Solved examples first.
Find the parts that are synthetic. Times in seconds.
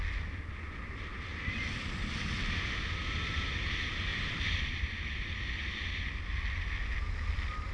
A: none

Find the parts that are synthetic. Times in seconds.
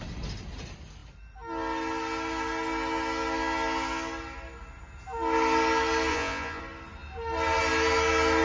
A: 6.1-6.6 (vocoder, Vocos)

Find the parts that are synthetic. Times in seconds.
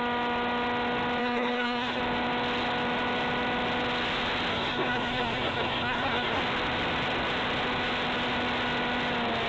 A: 1.2-2.0 (codec, SNAC); 4.5-6.4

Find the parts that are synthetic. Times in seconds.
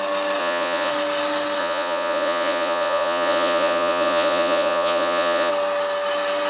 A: 0.4-0.9 (vocoder, Vocos); 1.6-5.5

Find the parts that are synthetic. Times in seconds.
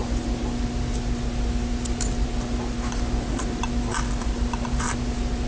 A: none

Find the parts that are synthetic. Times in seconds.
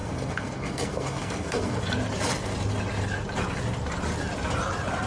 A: 0.0-1.8 (codec, SNAC)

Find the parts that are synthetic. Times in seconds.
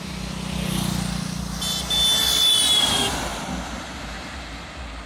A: 3.3-4.0 (vocoder, BigVGAN v2)